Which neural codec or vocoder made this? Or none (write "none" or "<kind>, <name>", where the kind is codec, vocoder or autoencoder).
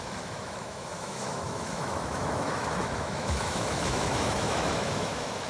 autoencoder, DAC-VAE